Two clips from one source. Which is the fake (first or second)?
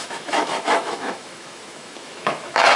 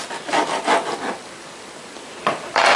first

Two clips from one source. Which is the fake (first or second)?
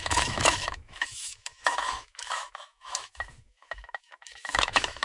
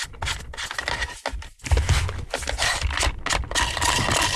first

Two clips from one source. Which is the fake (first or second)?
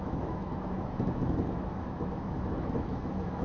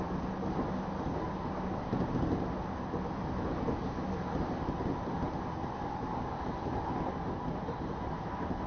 first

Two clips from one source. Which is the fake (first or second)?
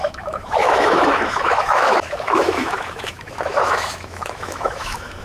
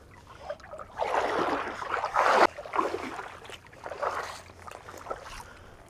first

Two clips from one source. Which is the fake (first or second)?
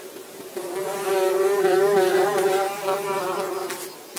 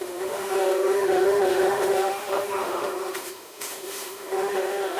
second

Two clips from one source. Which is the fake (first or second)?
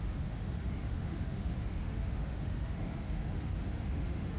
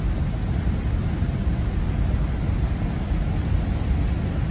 first